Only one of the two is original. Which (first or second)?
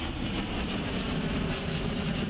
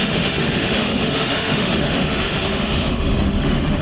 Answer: first